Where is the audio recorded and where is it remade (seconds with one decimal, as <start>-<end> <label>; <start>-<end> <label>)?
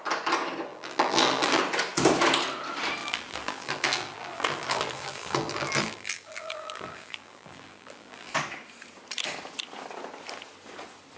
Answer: 0.0-0.7 recorded; 0.7-1.6 remade; 1.6-3.0 recorded; 3.0-8.3 remade; 8.3-11.2 recorded